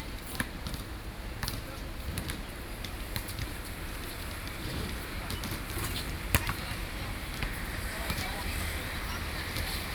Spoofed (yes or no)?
yes